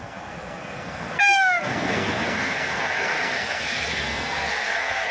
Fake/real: fake